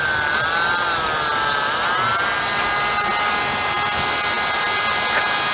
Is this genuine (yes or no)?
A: yes